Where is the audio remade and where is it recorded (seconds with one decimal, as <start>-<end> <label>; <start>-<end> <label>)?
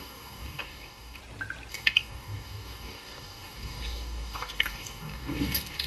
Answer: 0.0-1.2 remade; 1.2-1.7 recorded; 1.7-5.9 remade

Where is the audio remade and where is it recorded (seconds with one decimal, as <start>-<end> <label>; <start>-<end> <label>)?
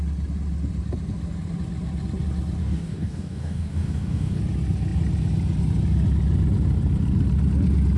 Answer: 0.0-2.6 recorded; 2.6-4.4 remade; 4.4-8.0 recorded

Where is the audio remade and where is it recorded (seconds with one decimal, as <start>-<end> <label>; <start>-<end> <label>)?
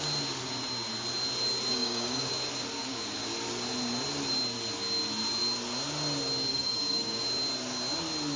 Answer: 0.0-1.7 recorded; 1.7-2.3 remade; 2.3-6.5 recorded; 6.5-7.2 remade; 7.2-8.4 recorded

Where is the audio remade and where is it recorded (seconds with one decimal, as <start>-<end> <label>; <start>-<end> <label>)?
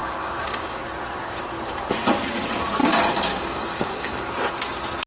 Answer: 0.0-0.8 remade; 0.8-2.8 recorded; 2.8-4.2 remade; 4.2-5.1 recorded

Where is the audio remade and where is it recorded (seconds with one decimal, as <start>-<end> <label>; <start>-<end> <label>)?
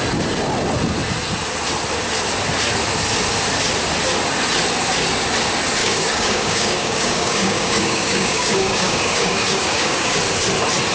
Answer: 0.0-5.8 recorded; 5.8-10.2 remade; 10.2-10.9 recorded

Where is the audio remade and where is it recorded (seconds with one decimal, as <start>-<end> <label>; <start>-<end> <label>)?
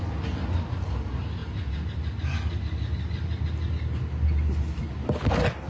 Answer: 0.0-5.7 recorded